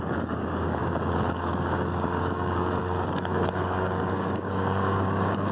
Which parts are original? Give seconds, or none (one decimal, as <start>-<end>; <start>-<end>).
none